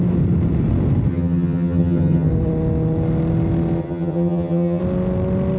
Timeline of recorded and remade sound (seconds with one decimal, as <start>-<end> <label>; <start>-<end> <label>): 0.0-1.1 recorded; 1.1-2.3 remade; 2.3-3.8 recorded; 3.8-4.8 remade; 4.8-5.6 recorded